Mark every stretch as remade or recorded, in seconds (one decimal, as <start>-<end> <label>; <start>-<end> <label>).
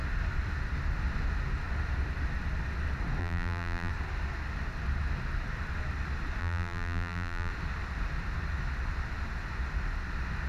0.0-3.2 recorded; 3.2-3.9 remade; 3.9-6.4 recorded; 6.4-7.5 remade; 7.5-10.5 recorded